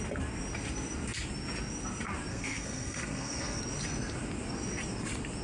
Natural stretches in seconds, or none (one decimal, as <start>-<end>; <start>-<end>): 0.0-2.3; 3.6-5.4